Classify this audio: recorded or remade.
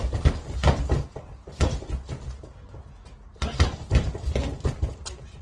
recorded